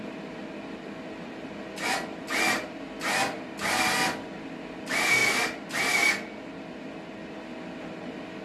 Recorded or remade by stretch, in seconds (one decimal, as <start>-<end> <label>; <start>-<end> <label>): 0.0-8.4 recorded